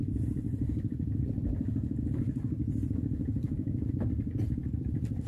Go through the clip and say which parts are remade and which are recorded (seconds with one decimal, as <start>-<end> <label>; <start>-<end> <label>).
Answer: 0.0-2.6 remade; 2.6-3.9 recorded; 3.9-5.3 remade